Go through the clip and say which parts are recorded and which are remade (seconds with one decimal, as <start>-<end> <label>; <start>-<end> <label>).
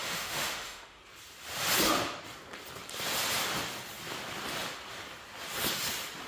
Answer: 0.0-1.0 remade; 1.0-6.3 recorded